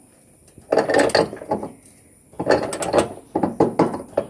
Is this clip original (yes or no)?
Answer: yes